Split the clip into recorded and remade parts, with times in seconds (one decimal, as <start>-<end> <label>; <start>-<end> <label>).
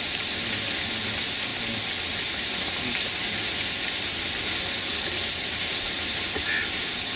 0.0-7.2 recorded